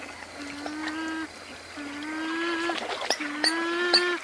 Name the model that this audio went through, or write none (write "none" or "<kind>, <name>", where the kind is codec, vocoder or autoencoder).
none